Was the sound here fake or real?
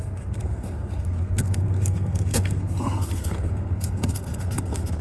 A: fake